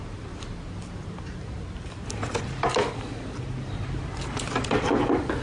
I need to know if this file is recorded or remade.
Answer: remade